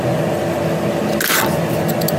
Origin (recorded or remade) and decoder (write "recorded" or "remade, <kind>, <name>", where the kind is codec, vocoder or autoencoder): recorded